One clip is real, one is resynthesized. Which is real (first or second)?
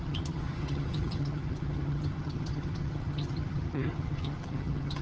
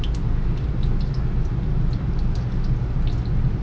second